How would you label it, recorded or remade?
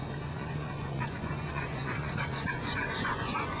remade